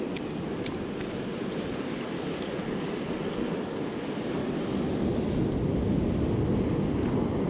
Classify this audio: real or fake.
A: real